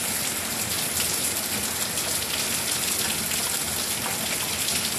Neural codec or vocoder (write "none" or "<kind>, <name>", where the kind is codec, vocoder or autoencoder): none